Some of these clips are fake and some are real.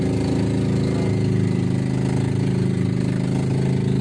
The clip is real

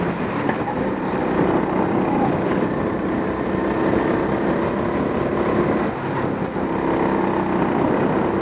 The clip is real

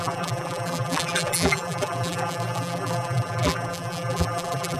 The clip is fake